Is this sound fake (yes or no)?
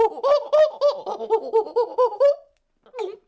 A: no